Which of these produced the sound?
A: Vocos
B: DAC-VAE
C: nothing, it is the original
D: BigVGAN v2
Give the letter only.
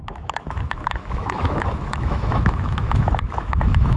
B